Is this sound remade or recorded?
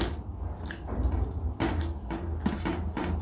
recorded